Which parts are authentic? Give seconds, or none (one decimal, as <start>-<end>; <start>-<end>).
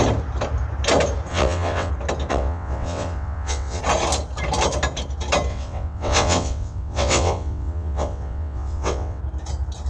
0.0-1.3; 1.9-2.3; 3.8-5.5; 9.2-9.9